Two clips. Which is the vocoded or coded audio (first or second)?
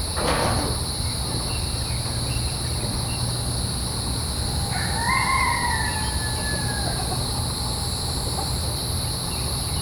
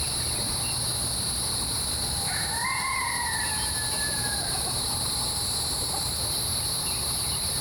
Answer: second